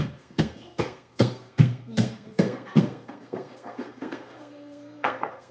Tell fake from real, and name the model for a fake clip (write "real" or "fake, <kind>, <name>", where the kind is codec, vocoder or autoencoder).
fake, codec, SNAC